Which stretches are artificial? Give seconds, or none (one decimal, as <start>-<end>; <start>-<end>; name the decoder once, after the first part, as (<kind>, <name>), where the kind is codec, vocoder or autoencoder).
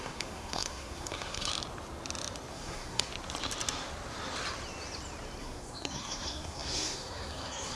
0.0-1.5 (codec, SNAC); 2.5-3.1; 5.4-7.8